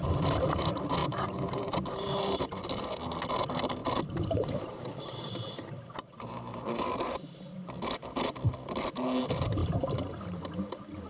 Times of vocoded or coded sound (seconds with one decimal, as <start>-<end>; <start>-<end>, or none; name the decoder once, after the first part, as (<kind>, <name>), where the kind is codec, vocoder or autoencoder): 1.0-2.6 (vocoder, BigVGAN v2); 3.8-7.4; 9.6-10.5